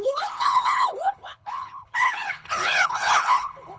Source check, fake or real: fake